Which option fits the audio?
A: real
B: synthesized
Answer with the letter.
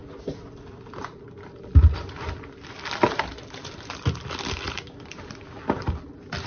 A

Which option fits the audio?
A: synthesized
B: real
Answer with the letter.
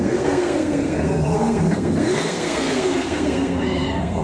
A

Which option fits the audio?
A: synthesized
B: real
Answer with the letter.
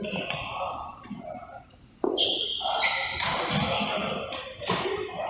B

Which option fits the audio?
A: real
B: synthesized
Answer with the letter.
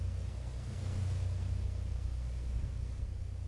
B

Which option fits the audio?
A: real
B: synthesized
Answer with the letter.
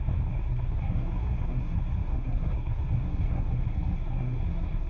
B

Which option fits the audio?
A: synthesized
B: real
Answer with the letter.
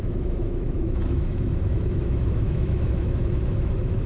A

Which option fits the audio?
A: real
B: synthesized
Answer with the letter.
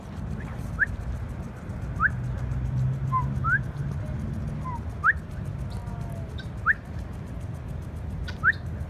A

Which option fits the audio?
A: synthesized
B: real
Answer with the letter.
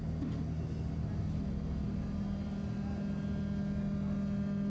B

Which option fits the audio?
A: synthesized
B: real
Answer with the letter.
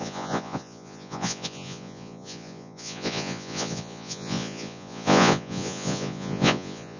A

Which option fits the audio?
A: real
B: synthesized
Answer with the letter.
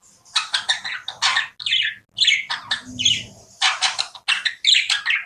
A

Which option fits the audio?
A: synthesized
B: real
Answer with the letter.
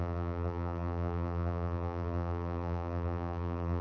A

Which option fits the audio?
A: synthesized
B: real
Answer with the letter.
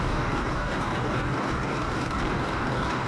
A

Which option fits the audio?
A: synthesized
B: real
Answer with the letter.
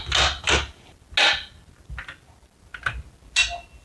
B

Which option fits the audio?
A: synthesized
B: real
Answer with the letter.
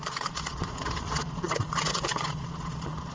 A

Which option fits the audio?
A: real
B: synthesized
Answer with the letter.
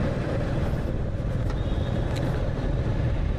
A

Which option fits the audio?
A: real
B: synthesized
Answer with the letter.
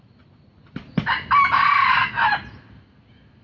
A